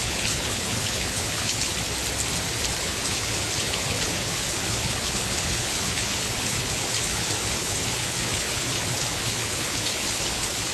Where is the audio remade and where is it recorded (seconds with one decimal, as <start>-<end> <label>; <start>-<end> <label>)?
0.0-1.7 remade; 1.7-2.8 recorded; 2.8-10.7 remade